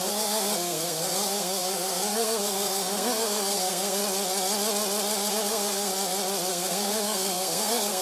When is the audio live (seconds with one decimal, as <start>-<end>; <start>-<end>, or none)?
4.0-5.3; 5.9-6.5